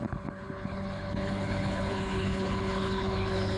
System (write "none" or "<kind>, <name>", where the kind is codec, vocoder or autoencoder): codec, HILCodec